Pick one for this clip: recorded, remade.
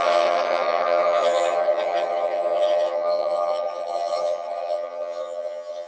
remade